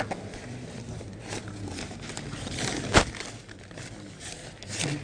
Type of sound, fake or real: real